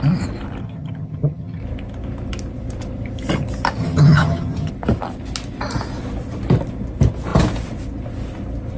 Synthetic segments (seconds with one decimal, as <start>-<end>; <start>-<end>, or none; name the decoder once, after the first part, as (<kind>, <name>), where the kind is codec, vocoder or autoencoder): 0.6-1.6 (vocoder, HiFi-GAN); 3.8-4.7